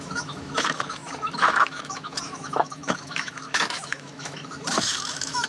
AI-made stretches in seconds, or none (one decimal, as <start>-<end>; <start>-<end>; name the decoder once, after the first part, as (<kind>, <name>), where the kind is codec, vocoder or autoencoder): 0.0-5.5 (autoencoder, DAC-VAE)